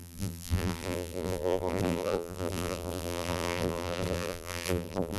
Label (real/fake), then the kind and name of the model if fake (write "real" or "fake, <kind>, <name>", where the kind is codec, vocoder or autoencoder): fake, vocoder, BigVGAN v2